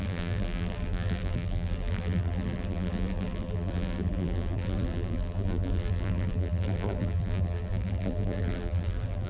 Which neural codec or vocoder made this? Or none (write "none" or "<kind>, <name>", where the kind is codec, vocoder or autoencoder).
vocoder, BigVGAN v2